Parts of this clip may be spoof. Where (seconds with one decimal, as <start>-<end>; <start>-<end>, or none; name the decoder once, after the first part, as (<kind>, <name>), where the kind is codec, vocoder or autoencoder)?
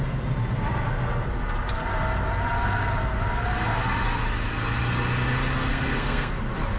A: 5.7-6.3 (codec, SNAC)